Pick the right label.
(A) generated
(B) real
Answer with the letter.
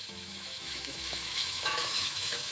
A